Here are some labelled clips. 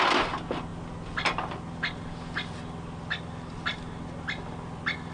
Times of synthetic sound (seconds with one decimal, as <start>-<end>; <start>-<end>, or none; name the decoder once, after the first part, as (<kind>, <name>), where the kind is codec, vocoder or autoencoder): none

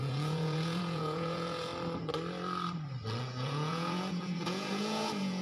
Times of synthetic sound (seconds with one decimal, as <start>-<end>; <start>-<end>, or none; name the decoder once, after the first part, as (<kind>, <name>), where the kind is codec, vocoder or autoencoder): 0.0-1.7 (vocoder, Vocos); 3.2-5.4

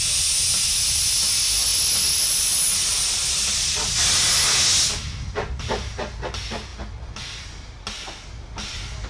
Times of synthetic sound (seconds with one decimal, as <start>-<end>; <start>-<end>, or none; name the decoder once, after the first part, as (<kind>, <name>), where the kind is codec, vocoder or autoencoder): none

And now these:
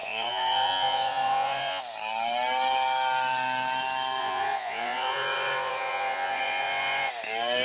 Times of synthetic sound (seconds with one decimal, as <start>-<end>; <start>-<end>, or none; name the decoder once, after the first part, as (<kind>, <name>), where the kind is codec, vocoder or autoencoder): 0.0-1.8 (vocoder, Vocos); 4.2-7.1

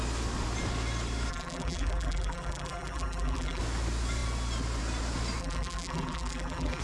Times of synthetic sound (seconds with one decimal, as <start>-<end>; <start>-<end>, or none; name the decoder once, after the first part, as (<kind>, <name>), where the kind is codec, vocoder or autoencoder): 1.3-3.6 (vocoder, BigVGAN v2); 5.4-6.8

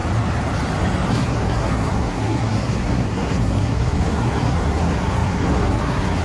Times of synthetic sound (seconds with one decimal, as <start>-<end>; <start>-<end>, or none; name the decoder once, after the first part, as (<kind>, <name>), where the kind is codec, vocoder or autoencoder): 1.1-6.2 (codec, SNAC)

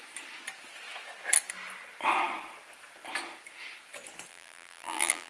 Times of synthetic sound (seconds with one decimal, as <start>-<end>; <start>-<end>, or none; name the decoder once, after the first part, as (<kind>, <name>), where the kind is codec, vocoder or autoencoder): 4.3-5.3 (vocoder, BigVGAN v2)